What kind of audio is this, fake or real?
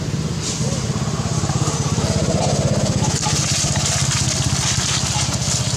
real